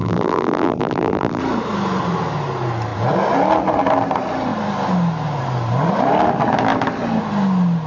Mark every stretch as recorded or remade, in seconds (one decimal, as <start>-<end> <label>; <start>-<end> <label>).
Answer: 0.0-1.4 remade; 1.4-7.9 recorded